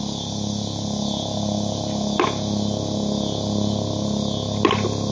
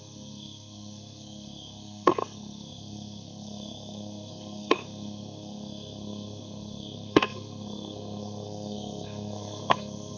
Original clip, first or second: first